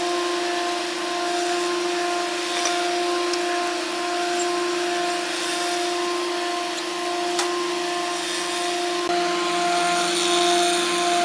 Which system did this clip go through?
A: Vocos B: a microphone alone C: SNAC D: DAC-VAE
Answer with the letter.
B